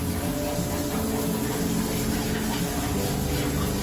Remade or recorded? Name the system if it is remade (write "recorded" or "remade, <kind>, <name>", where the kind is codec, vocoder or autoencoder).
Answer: recorded